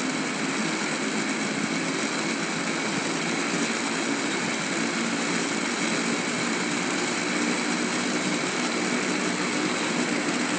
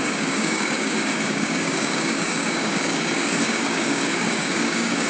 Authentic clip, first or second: first